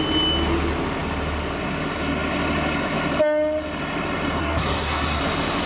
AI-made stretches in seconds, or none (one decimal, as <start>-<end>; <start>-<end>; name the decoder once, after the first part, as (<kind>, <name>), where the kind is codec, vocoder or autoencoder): 4.4-5.2 (codec, SNAC)